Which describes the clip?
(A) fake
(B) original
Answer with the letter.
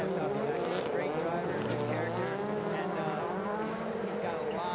B